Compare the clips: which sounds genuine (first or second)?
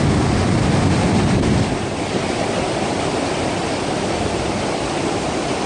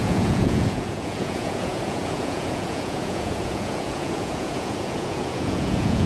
first